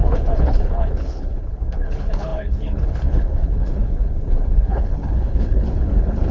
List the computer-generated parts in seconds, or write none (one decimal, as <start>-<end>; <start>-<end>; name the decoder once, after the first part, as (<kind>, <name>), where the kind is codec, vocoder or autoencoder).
0.0-6.3 (codec, HILCodec)

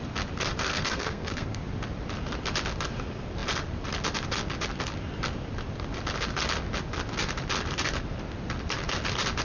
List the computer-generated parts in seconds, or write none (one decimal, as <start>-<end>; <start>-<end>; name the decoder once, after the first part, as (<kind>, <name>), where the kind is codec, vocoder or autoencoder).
0.7-1.6 (codec, SNAC)

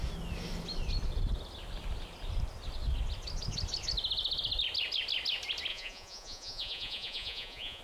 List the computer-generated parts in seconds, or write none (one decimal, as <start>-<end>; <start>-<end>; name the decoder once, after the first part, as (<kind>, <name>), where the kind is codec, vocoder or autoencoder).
5.7-7.8 (vocoder, Vocos)

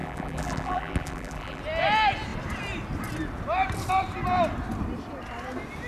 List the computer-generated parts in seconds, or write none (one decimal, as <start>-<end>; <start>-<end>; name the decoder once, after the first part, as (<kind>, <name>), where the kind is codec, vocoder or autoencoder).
0.0-1.6 (vocoder, BigVGAN v2)

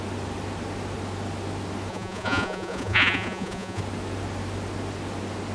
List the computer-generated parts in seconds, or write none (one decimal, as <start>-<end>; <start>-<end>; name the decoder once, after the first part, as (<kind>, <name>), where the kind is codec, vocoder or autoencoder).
1.9-3.8 (vocoder, Vocos)

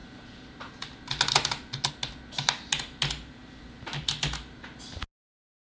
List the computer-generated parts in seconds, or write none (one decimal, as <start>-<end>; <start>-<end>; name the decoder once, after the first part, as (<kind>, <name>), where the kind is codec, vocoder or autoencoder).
none

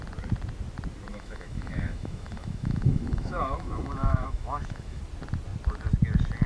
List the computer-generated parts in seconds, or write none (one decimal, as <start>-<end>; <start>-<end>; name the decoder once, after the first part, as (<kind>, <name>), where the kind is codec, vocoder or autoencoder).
1.1-5.0 (autoencoder, DAC-VAE)